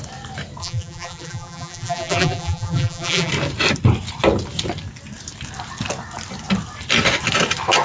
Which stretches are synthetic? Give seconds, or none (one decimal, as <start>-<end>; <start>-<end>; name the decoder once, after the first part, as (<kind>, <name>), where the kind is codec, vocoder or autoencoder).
0.6-3.3 (vocoder, BigVGAN v2)